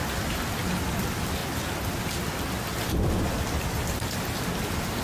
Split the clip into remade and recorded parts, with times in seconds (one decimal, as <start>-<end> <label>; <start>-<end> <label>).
0.0-5.0 recorded